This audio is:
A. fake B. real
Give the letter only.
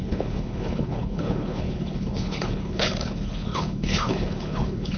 A